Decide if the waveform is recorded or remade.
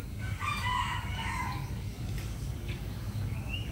remade